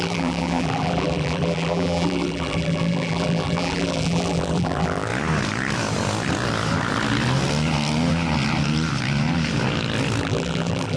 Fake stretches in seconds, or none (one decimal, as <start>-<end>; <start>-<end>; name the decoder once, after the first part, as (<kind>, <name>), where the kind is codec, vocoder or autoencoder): 0.0-5.1 (vocoder, BigVGAN v2); 10.2-11.0